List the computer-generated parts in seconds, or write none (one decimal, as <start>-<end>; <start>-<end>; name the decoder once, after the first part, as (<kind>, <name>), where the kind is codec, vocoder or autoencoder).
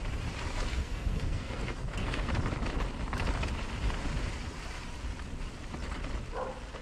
0.7-2.3 (codec, SNAC)